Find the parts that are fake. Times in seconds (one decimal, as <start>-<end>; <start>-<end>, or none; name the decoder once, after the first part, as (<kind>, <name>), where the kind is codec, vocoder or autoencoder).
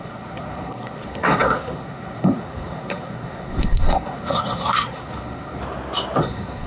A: 0.0-5.6 (codec, SNAC); 6.2-6.7